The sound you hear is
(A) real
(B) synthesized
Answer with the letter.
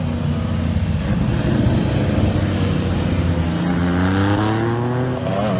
A